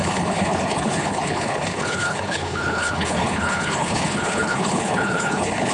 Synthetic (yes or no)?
yes